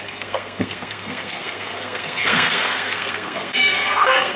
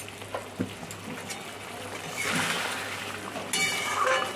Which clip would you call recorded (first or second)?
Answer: second